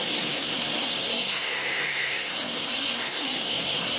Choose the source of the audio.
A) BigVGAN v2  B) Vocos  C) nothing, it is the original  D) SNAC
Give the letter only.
D